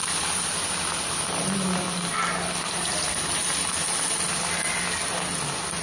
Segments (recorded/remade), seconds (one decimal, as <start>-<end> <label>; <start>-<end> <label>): 0.0-5.8 recorded